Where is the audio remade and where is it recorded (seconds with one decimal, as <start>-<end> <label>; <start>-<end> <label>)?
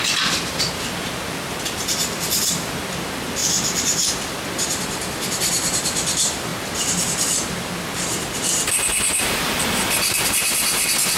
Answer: 0.0-11.2 remade